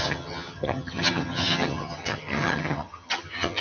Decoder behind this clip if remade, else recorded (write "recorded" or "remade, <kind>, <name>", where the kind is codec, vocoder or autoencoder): remade, vocoder, HiFi-GAN